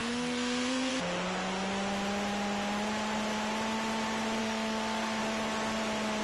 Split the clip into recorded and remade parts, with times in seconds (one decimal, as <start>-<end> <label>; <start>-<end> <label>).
0.0-0.9 remade; 0.9-4.4 recorded; 4.4-5.2 remade; 5.2-6.2 recorded